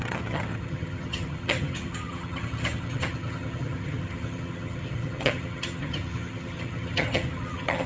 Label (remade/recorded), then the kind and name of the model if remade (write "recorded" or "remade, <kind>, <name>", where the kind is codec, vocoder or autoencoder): remade, vocoder, HiFi-GAN